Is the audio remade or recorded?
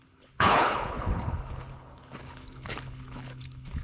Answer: remade